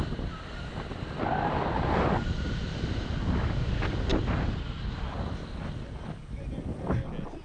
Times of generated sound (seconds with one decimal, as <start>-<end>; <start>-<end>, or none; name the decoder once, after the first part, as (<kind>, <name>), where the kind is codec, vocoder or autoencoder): 0.0-2.8 (vocoder, BigVGAN v2); 4.1-5.9